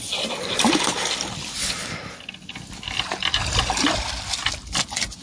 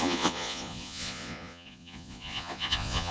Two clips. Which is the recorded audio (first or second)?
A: first